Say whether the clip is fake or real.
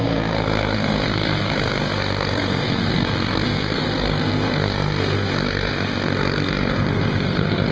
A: fake